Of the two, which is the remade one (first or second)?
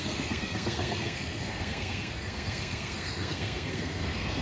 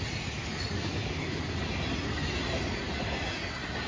first